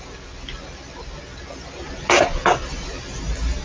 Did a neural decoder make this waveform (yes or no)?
no